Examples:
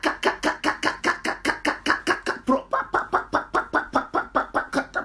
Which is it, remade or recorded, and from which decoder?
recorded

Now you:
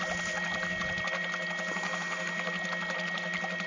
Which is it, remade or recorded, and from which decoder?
recorded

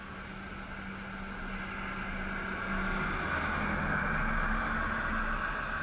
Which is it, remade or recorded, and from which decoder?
recorded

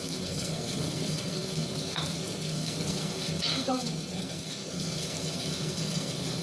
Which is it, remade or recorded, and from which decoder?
remade, codec, SNAC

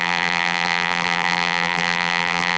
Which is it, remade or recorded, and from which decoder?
remade, vocoder, BigVGAN v2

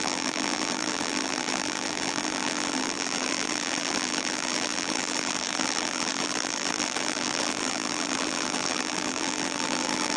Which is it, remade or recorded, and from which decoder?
remade, vocoder, BigVGAN v2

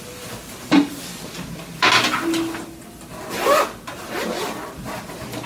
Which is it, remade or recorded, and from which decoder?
recorded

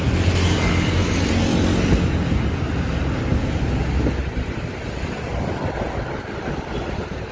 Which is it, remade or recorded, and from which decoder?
recorded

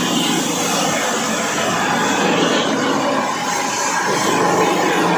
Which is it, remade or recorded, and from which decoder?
recorded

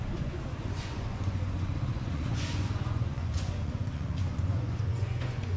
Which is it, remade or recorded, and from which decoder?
remade, vocoder, Vocos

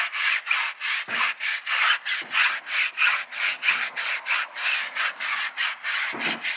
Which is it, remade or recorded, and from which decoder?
recorded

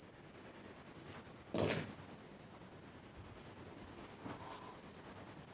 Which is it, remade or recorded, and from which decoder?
recorded